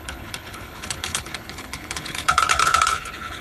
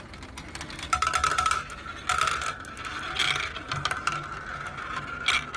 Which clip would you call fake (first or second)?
first